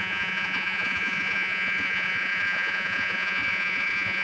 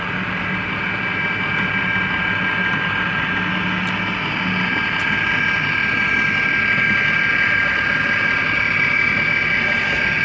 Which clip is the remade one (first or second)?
first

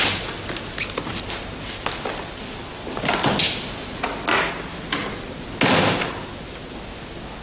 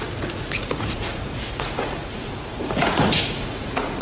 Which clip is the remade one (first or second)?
second